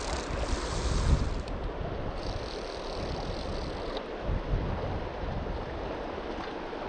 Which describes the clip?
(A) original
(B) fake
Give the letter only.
A